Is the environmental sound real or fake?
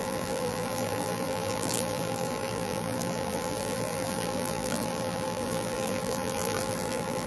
fake